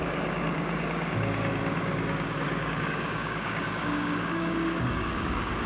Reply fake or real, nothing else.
fake